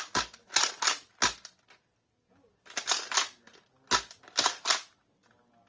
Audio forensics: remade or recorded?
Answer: recorded